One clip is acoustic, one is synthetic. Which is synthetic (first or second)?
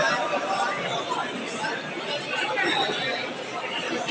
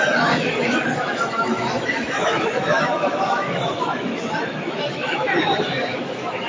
second